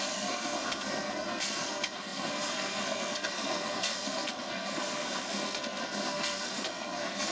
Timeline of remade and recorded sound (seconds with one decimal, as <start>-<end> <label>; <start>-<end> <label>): 0.0-7.3 remade